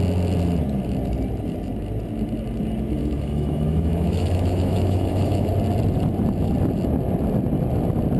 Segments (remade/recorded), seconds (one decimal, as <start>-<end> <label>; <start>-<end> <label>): 0.0-3.0 recorded; 3.0-5.5 remade; 5.5-8.2 recorded